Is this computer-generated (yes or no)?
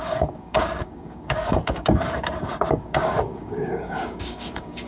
yes